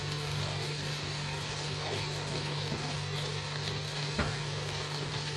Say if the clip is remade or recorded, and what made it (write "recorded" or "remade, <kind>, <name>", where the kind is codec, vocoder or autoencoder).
remade, codec, DAC